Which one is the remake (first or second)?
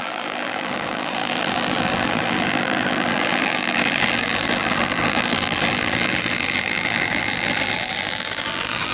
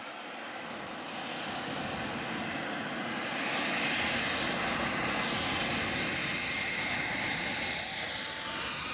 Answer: first